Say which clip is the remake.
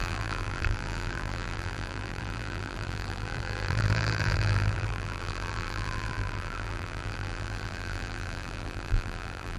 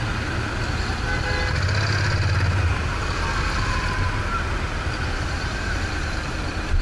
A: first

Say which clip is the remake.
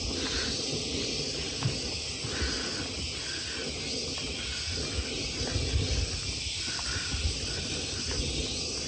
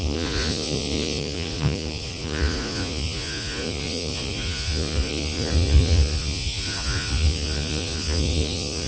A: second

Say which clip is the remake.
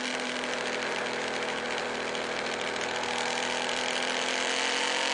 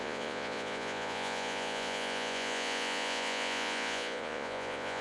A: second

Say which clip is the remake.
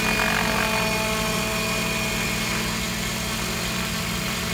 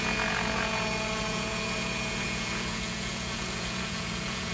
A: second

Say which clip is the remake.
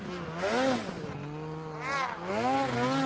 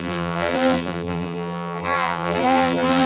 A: second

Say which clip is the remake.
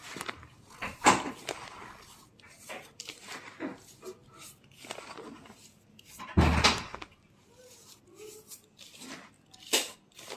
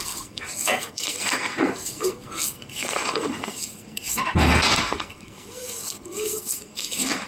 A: second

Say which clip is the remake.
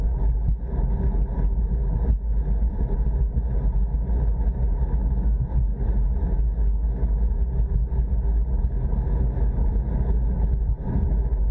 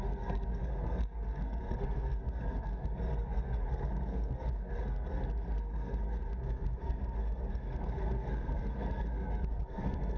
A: second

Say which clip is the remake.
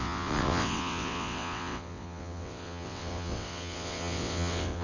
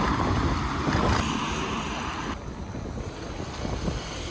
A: first